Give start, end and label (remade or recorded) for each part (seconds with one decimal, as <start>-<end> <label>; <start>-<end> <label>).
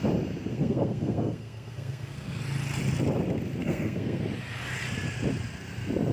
0.0-0.5 recorded; 0.5-2.4 remade; 2.4-3.6 recorded; 3.6-4.2 remade; 4.2-6.1 recorded